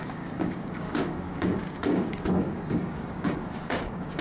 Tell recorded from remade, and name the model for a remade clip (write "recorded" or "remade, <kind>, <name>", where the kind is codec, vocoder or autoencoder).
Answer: remade, codec, DAC